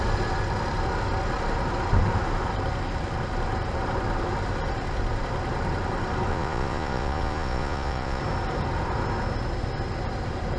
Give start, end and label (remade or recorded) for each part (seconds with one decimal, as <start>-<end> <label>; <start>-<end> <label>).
0.0-6.3 recorded; 6.3-8.2 remade; 8.2-10.6 recorded